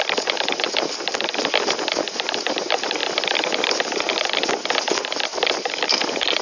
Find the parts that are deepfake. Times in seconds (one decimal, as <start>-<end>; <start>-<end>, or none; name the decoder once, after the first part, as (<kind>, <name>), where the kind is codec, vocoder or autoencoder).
none